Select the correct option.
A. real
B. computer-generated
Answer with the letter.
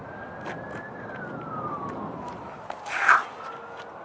A